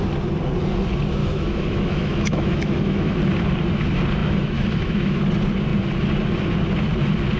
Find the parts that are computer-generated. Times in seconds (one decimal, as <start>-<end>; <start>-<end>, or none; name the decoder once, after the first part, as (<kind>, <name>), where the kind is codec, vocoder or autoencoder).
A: 1.2-3.2 (autoencoder, DAC-VAE); 4.2-5.2